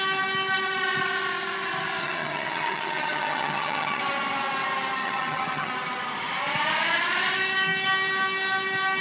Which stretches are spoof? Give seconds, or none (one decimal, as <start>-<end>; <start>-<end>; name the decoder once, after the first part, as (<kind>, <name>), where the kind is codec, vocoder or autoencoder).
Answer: 2.0-4.0 (vocoder, HiFi-GAN); 5.0-5.7